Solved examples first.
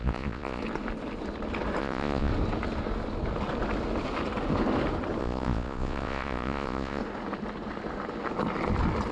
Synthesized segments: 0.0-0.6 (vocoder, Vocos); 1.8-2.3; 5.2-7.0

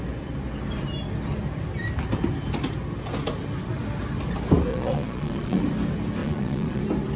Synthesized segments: 4.7-5.6 (vocoder, Vocos); 6.2-6.8

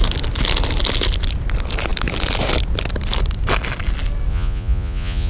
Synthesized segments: 4.3-5.3 (vocoder, Vocos)

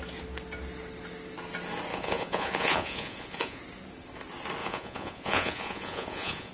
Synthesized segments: 1.9-3.6 (vocoder, Vocos); 4.6-6.5

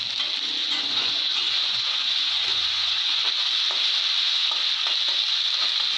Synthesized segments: 0.6-3.3 (vocoder, Vocos)

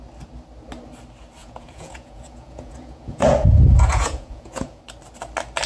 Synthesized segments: 1.4-4.8 (vocoder, Vocos)